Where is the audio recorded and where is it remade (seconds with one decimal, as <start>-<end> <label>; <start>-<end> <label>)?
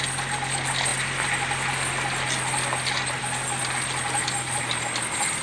0.0-5.4 recorded